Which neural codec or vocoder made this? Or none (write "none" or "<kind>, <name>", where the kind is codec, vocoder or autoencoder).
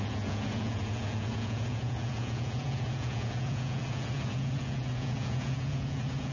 vocoder, Vocos